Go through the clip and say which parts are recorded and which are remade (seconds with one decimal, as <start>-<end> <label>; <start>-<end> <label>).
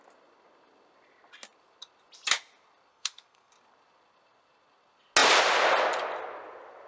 0.0-2.9 recorded; 2.9-3.5 remade; 3.5-6.9 recorded